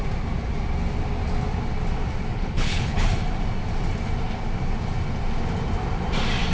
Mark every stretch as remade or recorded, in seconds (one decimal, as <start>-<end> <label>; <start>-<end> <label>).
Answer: 0.0-2.3 recorded; 2.3-3.1 remade; 3.1-6.5 recorded